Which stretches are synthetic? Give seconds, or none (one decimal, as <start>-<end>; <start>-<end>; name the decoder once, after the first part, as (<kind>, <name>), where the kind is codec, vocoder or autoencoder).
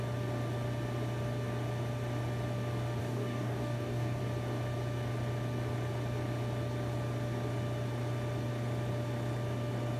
3.0-4.2 (codec, DAC)